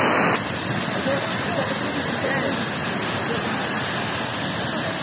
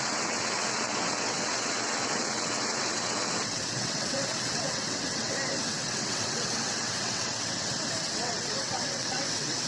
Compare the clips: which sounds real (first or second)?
first